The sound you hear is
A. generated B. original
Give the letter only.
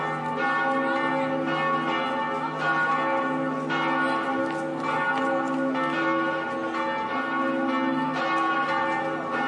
B